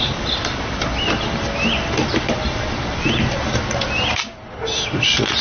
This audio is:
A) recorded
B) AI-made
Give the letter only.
A